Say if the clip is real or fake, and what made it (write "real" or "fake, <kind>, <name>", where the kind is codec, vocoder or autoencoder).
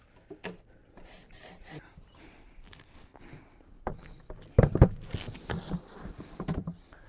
real